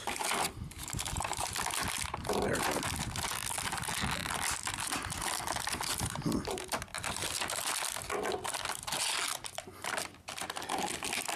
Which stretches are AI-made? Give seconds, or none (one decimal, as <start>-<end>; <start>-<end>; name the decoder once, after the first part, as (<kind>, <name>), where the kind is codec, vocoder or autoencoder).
none